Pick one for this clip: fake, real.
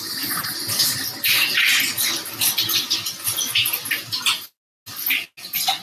real